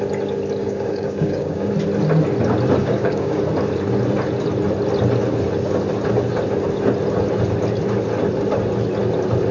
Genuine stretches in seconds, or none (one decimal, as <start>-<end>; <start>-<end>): 0.0-0.6; 1.7-2.8; 3.4-9.5